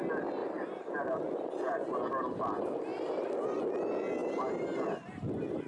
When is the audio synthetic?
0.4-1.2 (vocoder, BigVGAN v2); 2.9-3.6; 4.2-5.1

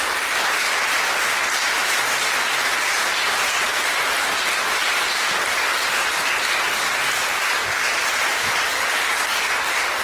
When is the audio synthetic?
none

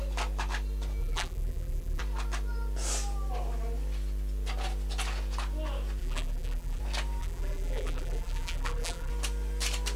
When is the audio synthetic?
1.0-2.0 (vocoder, BigVGAN v2); 6.0-6.8; 7.2-9.1

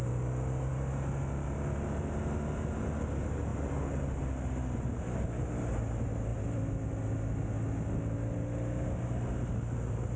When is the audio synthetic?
none

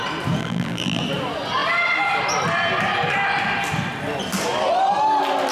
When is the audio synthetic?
0.4-1.0 (vocoder, BigVGAN v2)

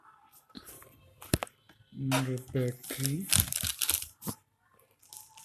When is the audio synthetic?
3.7-5.0 (vocoder, BigVGAN v2)